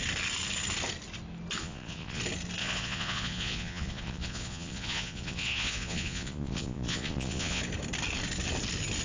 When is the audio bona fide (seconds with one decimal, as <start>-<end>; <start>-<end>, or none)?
0.0-1.6; 2.2-2.6; 7.6-9.0